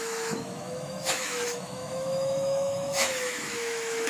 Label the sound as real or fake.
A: fake